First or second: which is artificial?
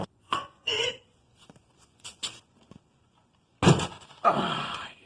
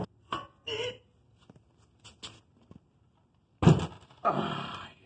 first